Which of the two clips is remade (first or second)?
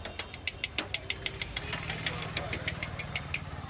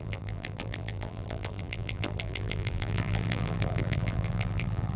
second